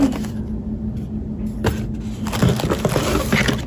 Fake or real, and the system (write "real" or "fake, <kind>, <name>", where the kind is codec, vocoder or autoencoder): real